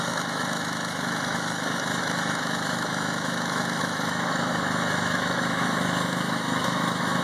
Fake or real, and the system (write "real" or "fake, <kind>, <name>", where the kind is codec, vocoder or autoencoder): fake, autoencoder, DAC-VAE